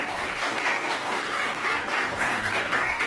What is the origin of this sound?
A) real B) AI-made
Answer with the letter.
B